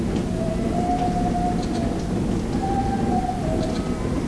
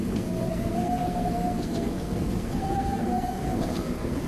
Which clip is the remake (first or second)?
second